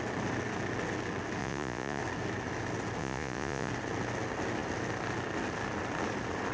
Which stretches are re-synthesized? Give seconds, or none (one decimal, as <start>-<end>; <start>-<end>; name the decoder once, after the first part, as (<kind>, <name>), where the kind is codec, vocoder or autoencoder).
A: 1.4-2.0 (vocoder, Vocos); 3.0-3.7